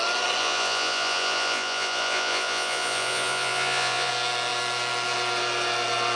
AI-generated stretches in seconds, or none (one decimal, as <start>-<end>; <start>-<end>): 0.4-4.1